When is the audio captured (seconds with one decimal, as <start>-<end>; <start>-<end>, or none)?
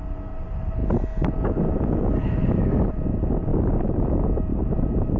0.0-3.5; 4.1-4.5